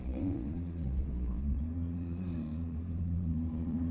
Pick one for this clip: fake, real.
fake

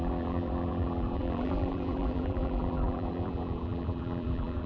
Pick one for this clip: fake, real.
fake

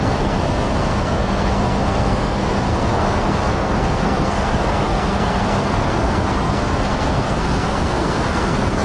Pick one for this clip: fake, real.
fake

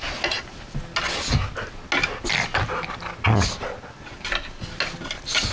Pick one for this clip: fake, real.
real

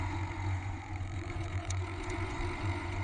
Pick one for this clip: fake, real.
fake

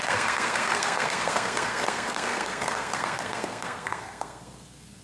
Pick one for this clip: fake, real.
fake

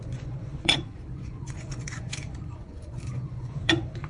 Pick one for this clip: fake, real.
fake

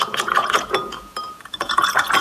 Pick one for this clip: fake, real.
fake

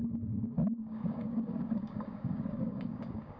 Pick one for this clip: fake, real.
fake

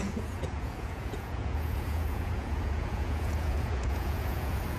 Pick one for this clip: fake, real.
fake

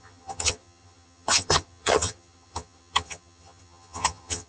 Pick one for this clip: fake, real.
fake